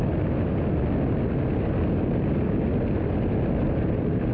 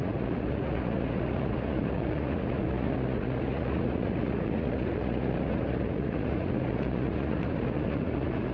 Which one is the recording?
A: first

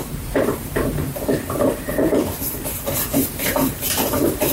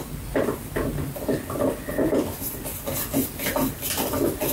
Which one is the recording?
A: second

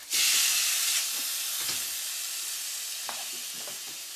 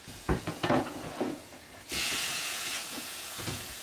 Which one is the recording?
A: first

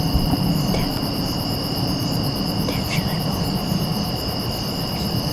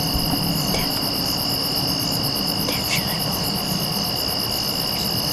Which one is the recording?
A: second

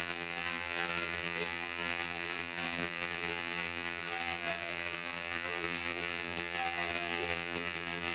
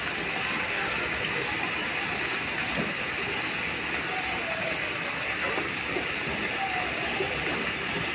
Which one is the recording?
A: second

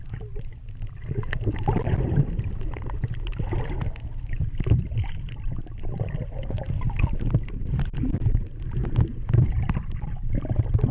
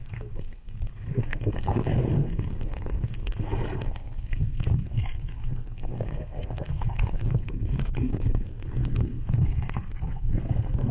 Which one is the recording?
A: first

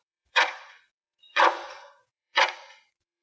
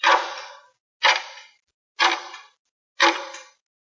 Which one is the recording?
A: second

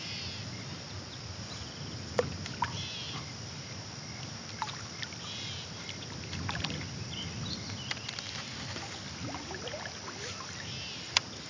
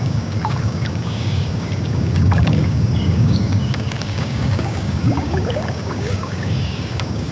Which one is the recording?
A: first